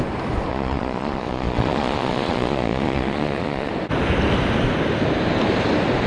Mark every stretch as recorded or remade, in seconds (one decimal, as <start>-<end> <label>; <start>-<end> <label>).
0.0-0.5 recorded; 0.5-3.7 remade; 3.7-6.1 recorded